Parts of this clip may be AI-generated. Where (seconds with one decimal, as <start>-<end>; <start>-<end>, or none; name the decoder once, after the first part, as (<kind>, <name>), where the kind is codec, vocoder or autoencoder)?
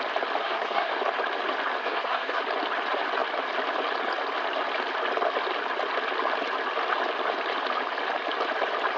0.4-0.9 (codec, SNAC); 1.8-2.4